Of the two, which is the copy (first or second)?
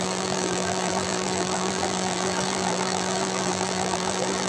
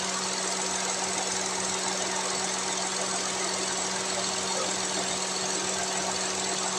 first